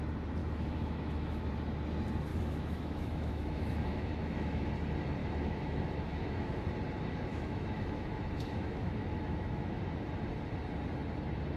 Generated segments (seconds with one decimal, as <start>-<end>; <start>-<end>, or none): 0.4-1.5; 2.3-4.7; 5.2-6.6; 7.3-9.8